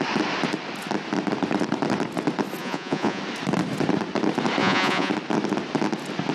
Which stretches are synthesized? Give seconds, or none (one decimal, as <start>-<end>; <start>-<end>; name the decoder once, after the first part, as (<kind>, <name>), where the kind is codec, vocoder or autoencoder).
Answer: 2.6-3.2 (vocoder, Vocos); 4.6-5.1

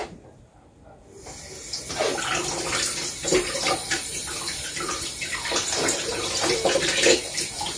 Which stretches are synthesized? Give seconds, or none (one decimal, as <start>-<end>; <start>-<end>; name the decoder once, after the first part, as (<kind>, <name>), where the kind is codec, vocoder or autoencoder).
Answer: 0.0-1.0 (vocoder, BigVGAN v2); 3.2-6.9

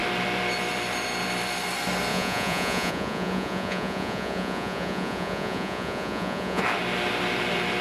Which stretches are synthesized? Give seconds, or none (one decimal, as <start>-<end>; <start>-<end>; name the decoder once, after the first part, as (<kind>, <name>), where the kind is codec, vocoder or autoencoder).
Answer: 2.1-6.6 (vocoder, Vocos)